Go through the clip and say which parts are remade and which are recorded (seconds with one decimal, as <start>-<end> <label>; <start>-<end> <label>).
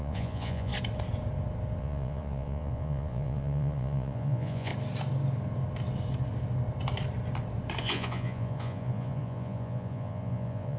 0.0-0.7 remade; 0.7-1.8 recorded; 1.8-4.7 remade; 4.7-7.8 recorded; 7.8-10.8 remade